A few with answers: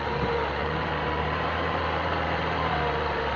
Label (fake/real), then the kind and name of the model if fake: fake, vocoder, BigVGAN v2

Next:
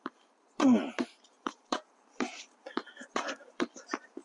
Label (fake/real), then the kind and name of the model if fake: fake, vocoder, BigVGAN v2